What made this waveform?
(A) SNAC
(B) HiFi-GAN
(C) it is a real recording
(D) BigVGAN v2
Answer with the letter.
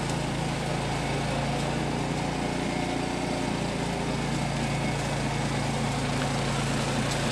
C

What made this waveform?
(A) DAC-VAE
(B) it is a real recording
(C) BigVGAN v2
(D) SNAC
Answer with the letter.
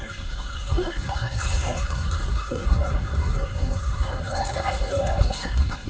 D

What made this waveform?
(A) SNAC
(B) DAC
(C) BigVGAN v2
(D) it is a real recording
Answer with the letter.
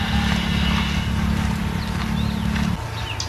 D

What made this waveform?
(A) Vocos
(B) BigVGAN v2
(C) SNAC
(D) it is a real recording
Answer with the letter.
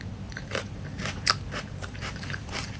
B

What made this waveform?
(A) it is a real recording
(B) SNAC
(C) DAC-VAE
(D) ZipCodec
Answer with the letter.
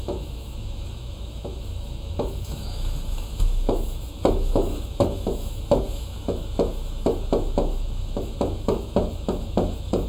C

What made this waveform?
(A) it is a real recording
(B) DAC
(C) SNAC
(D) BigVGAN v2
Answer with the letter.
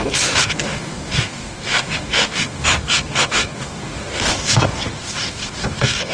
B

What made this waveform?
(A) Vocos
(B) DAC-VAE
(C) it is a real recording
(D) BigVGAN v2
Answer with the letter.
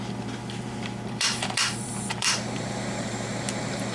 D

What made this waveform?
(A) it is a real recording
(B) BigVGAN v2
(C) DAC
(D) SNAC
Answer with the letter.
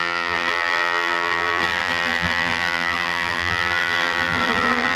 B